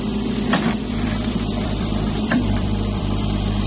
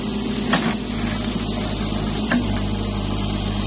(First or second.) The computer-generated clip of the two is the first